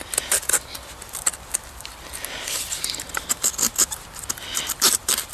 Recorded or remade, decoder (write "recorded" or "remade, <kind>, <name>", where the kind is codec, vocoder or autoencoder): recorded